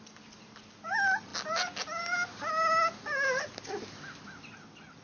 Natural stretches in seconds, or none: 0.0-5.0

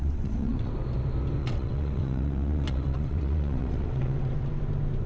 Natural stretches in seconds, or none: 0.7-1.4; 4.5-5.1

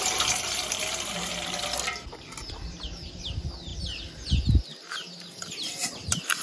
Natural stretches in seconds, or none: 0.0-6.4

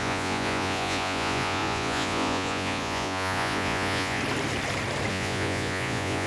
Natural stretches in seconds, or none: 4.2-5.1

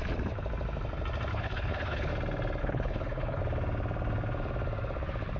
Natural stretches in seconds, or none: 0.0-1.3; 2.1-2.6; 3.4-5.4

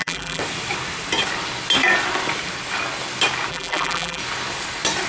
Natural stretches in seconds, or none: 0.4-3.5; 4.2-5.1